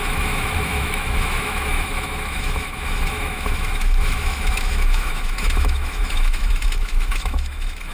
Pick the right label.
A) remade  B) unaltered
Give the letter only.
A